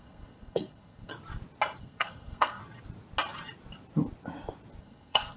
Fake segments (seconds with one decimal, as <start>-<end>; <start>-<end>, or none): 0.0-1.1; 1.8-2.6; 4.8-5.4